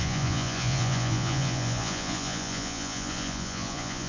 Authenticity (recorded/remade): remade